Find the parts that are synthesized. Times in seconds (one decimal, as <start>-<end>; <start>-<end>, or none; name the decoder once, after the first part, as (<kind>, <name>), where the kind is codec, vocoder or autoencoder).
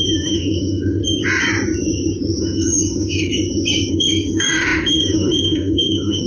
0.0-1.0 (autoencoder, DAC-VAE); 2.4-3.3; 3.9-6.3